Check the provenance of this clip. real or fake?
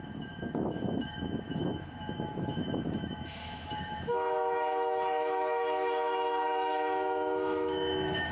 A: fake